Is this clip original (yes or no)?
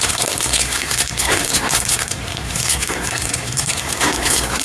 no